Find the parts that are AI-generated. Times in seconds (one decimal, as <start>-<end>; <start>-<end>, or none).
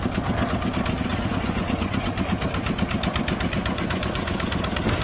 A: 1.1-2.1; 3.6-4.6